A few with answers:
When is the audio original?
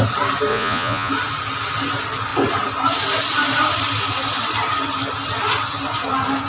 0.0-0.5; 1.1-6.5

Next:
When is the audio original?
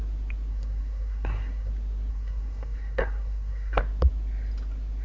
0.0-0.5; 1.7-2.1; 3.8-5.0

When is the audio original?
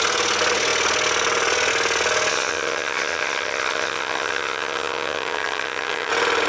0.0-2.3; 6.1-6.5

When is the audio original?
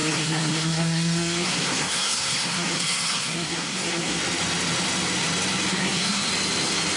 4.2-5.7; 6.3-7.0